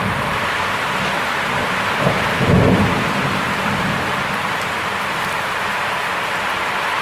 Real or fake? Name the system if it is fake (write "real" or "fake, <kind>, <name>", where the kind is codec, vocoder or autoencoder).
fake, vocoder, BigVGAN v2